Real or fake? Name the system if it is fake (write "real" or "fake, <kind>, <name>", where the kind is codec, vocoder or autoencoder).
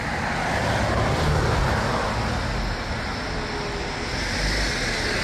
real